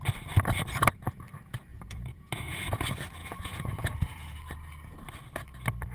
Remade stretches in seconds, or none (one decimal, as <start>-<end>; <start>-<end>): 1.7-2.7; 3.2-4.4